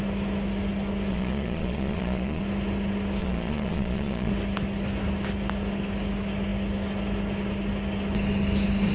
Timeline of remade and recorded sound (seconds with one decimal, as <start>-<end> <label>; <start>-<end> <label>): 0.0-1.1 recorded; 1.1-2.4 remade; 2.4-3.2 recorded; 3.2-4.3 remade; 4.3-8.9 recorded